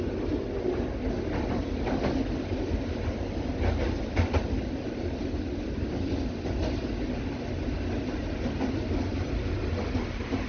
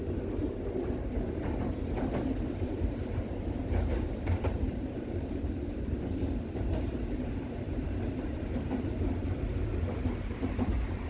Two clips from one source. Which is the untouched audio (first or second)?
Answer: first